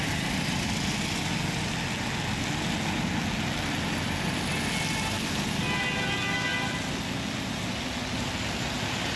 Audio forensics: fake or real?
real